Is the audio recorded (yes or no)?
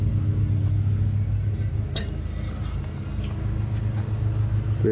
yes